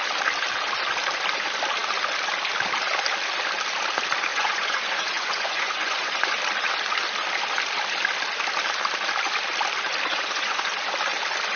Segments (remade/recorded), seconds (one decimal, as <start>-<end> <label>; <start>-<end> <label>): 0.0-4.3 recorded; 4.3-6.4 remade; 6.4-10.1 recorded; 10.1-10.7 remade; 10.7-11.6 recorded